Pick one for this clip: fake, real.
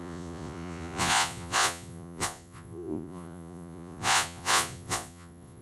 fake